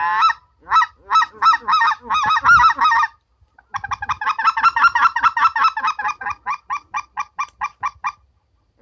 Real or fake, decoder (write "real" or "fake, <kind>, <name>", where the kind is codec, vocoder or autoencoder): real